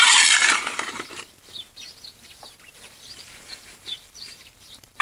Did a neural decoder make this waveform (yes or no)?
yes